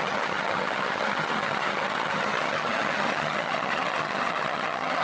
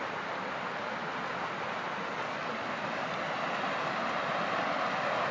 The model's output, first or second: first